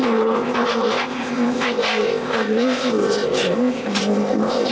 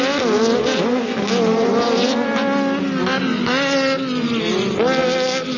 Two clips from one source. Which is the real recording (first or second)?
second